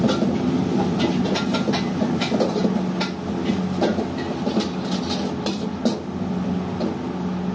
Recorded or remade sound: recorded